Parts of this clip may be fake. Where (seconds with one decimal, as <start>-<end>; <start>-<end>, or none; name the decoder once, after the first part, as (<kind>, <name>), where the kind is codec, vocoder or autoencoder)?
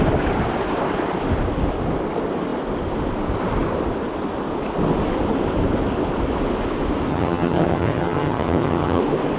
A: 7.1-9.0 (vocoder, HiFi-GAN)